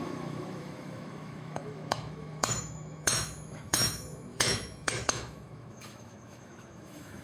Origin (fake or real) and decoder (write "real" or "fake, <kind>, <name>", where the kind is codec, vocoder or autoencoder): fake, autoencoder, DAC-VAE